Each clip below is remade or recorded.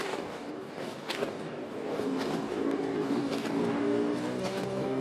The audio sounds remade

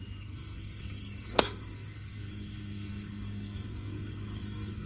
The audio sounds remade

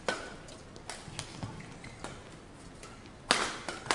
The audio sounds recorded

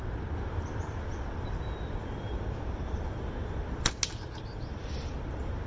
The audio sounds recorded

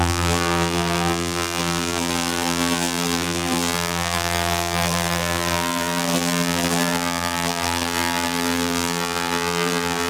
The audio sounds remade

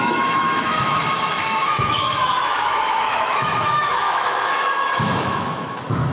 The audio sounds remade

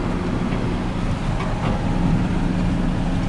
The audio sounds recorded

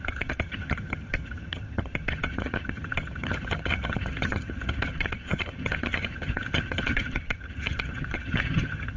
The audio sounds remade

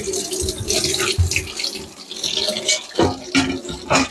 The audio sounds recorded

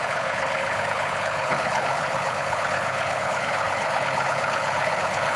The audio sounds remade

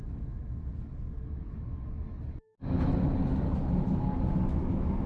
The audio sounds remade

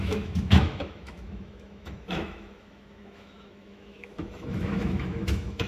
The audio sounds remade